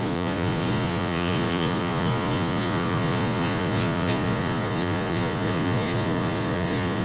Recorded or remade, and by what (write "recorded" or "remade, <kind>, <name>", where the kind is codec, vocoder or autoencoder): remade, vocoder, Vocos